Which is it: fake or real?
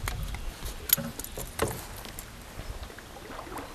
real